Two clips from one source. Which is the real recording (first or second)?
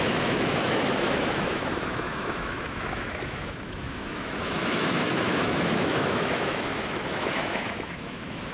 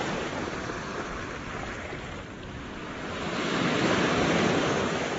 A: second